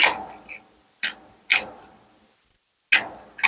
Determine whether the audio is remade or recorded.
recorded